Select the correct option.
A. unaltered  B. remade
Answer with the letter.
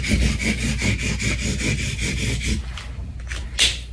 A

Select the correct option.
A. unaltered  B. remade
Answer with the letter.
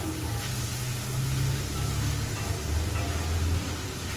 A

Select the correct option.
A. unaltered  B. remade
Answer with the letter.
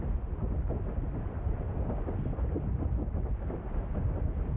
A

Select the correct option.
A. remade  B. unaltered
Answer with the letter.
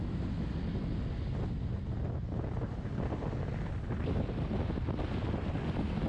B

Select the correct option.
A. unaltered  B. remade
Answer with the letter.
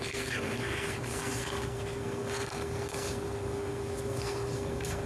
B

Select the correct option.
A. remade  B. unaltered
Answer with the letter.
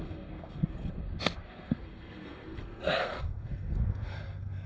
A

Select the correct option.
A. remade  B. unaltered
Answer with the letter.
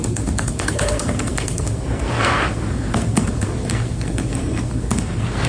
A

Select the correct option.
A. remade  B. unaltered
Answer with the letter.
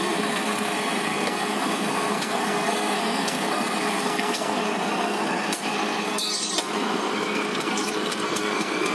A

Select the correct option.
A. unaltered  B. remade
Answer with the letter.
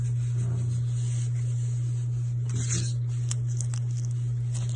A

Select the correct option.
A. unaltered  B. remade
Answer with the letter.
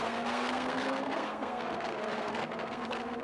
B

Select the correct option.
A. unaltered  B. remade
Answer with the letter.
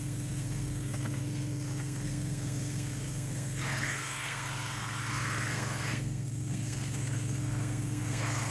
B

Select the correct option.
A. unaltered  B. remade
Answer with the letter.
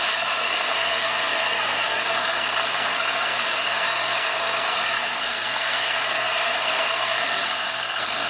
B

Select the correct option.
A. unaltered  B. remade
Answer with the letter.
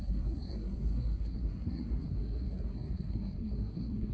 B